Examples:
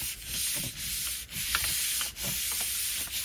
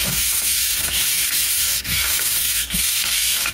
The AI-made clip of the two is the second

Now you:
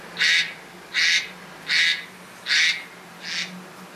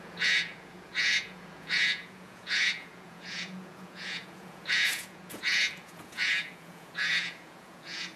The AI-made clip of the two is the second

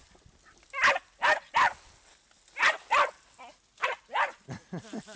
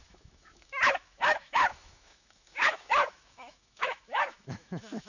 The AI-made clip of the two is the second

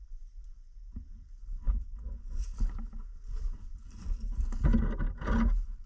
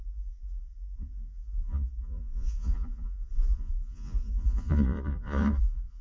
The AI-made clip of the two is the second